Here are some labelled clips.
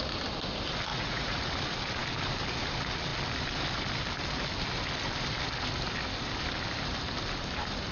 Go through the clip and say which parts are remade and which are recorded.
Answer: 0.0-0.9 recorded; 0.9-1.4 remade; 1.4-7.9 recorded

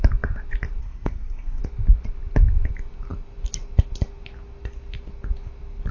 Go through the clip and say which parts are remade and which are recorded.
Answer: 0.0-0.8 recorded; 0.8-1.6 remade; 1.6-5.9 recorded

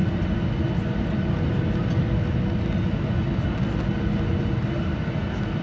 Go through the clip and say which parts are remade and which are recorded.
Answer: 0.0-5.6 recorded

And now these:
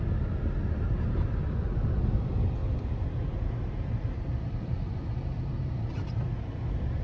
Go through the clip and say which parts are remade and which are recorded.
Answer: 0.0-7.0 recorded